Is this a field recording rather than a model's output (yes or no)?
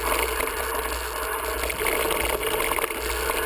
yes